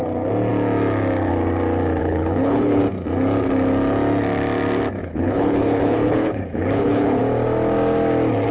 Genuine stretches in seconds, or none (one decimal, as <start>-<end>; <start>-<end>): 0.0-2.0; 2.8-5.0; 7.2-8.5